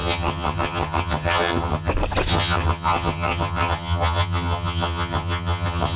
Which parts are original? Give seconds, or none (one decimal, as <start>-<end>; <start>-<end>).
1.9-2.3